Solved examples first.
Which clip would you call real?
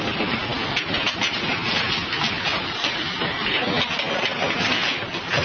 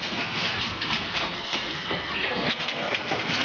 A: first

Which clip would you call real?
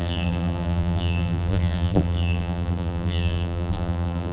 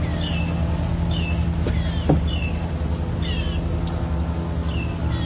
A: second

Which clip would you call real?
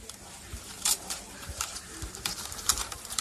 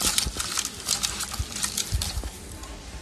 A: second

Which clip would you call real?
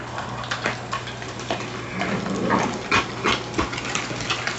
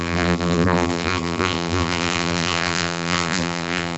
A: first